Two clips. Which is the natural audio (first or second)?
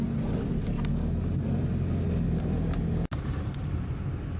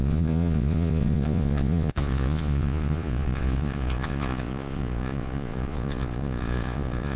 first